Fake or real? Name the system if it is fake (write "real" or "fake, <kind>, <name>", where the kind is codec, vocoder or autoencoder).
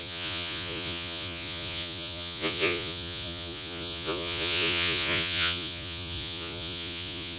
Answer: fake, vocoder, Vocos